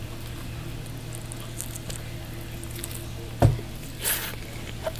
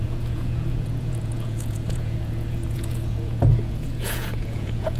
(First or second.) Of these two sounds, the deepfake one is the second